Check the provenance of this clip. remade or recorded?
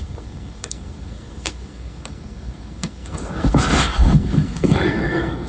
remade